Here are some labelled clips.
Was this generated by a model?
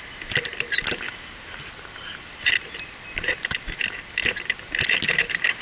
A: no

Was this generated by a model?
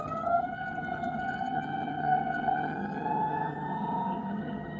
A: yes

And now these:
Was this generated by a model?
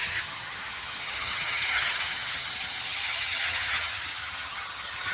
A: yes